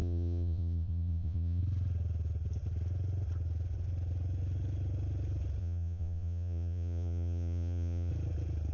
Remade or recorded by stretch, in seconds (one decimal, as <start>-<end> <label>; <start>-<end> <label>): 0.0-1.6 remade; 1.6-5.6 recorded; 5.6-8.1 remade; 8.1-8.7 recorded